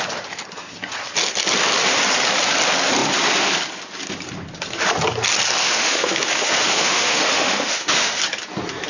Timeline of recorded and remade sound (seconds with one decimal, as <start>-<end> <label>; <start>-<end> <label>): 0.0-5.6 recorded; 5.6-8.2 remade; 8.2-8.9 recorded